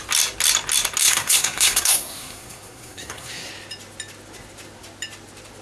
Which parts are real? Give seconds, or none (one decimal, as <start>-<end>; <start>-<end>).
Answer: 0.0-1.0; 3.5-5.6